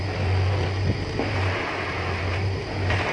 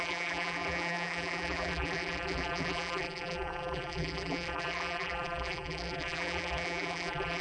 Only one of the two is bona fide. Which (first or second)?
first